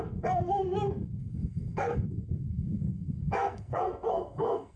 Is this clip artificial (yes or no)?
yes